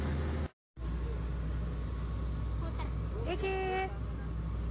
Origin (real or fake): real